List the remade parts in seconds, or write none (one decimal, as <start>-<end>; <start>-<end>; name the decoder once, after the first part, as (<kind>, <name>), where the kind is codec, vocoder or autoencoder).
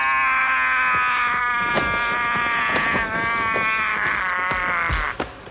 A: none